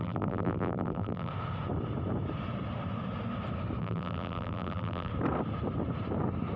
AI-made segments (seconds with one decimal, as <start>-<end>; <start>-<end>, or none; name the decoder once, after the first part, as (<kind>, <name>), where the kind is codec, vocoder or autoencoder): 0.0-1.3 (vocoder, BigVGAN v2); 3.8-5.1